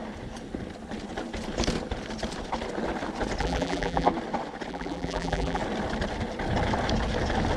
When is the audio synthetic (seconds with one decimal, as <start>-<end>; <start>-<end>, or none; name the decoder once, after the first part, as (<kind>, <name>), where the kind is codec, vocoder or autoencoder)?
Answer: 3.4-4.1 (vocoder, BigVGAN v2); 4.7-5.6